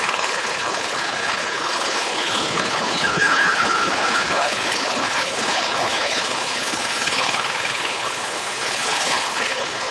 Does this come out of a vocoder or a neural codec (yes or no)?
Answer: yes